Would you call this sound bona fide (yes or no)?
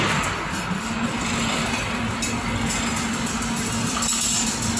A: yes